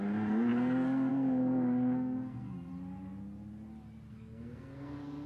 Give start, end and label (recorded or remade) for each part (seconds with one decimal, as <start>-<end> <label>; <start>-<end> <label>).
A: 0.0-2.7 remade; 2.7-4.1 recorded; 4.1-5.3 remade